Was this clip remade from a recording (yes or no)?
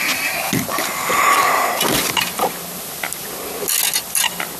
no